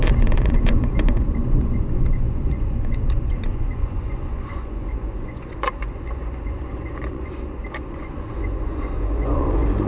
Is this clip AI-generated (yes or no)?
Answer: yes